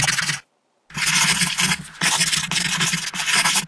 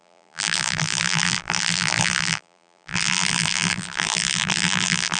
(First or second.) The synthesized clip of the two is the second